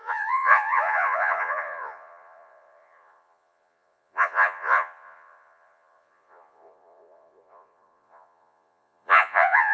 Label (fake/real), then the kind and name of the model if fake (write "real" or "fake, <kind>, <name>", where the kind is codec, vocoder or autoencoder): fake, vocoder, Vocos